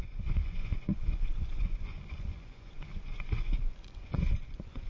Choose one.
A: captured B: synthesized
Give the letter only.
B